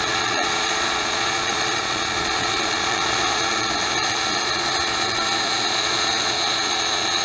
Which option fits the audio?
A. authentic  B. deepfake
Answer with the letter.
B